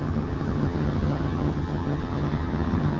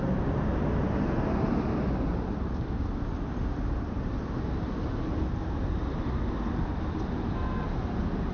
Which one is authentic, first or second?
second